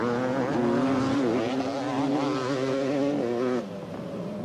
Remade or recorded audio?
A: recorded